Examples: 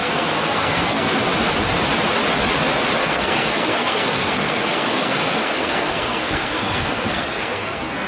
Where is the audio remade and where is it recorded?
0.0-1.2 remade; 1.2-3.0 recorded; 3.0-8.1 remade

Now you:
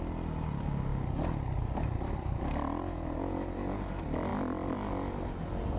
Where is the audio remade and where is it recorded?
0.0-0.9 recorded; 0.9-3.2 remade; 3.2-5.8 recorded

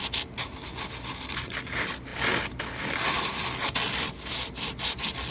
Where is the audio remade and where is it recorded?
0.0-5.3 recorded

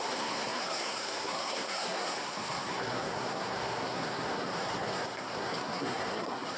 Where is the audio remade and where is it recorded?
0.0-6.6 remade

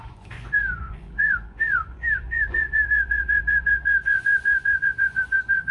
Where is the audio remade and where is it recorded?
0.0-5.7 remade

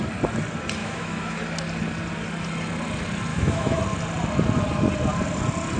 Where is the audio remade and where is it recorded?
0.0-0.8 recorded; 0.8-1.4 remade; 1.4-3.3 recorded; 3.3-3.8 remade; 3.8-5.8 recorded